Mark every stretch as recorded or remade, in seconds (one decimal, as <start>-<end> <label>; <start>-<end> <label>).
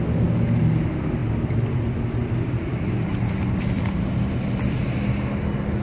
0.0-5.8 recorded